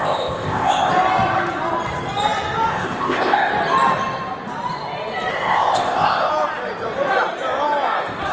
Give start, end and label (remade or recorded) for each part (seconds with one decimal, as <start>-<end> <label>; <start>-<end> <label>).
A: 0.0-0.9 remade; 0.9-2.7 recorded; 2.7-3.5 remade; 3.5-5.3 recorded; 5.3-6.3 remade; 6.3-8.3 recorded